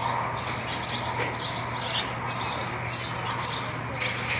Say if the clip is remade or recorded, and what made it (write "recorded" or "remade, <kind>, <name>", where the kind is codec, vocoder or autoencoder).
recorded